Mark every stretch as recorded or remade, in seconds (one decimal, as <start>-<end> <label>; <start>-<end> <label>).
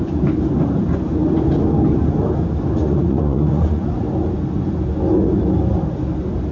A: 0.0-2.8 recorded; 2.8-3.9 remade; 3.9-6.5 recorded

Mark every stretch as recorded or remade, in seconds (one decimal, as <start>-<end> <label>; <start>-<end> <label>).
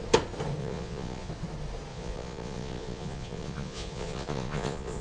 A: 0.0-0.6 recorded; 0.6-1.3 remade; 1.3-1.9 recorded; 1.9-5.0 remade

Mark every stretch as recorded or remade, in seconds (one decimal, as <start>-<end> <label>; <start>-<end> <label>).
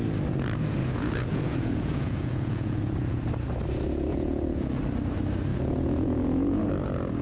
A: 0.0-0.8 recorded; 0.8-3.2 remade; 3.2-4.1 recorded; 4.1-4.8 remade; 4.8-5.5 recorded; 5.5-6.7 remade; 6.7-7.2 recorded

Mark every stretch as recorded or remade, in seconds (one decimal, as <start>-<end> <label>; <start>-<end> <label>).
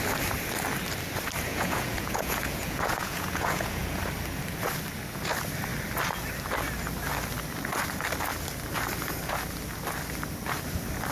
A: 0.0-1.5 recorded; 1.5-4.0 remade; 4.0-11.1 recorded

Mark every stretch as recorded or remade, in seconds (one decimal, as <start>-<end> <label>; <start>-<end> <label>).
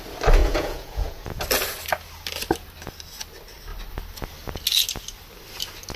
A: 0.0-0.4 recorded; 0.4-1.4 remade; 1.4-6.0 recorded